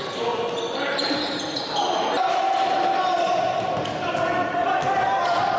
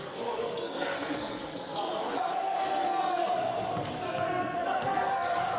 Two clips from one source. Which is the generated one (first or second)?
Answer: second